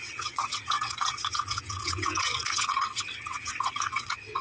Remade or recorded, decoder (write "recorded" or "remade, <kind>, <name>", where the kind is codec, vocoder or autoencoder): remade, vocoder, WaveNeXt